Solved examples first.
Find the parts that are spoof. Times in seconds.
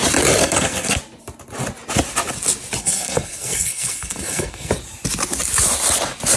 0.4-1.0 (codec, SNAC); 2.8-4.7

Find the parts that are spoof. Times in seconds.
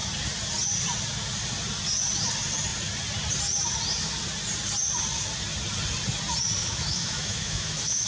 6.6-8.1 (autoencoder, DAC-VAE)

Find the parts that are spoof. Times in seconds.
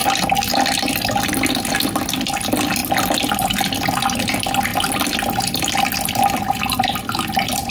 none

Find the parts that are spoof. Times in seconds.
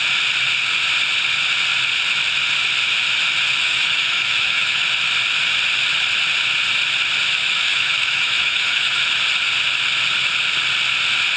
3.6-4.8 (autoencoder, DAC-VAE); 7.4-9.0